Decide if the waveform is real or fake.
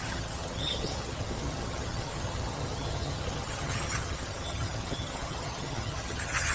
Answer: fake